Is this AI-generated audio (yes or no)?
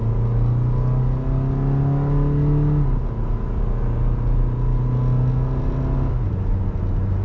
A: no